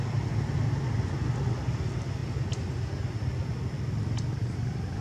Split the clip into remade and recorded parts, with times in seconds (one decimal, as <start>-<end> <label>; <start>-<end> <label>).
0.0-5.0 recorded